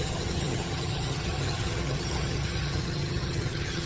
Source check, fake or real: fake